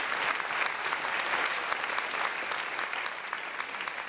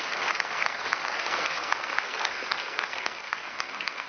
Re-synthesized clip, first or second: second